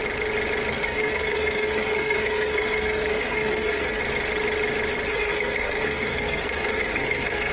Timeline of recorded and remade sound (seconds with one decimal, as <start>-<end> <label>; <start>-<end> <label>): 0.0-0.7 recorded; 0.7-4.0 remade; 4.0-5.1 recorded; 5.1-7.5 remade